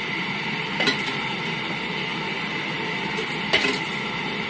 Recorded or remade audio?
recorded